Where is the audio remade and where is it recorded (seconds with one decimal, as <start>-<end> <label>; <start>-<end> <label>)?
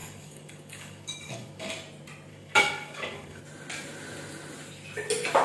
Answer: 0.0-1.7 remade; 1.7-2.3 recorded; 2.3-3.4 remade; 3.4-5.4 recorded